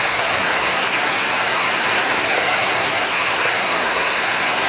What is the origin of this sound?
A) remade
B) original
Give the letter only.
A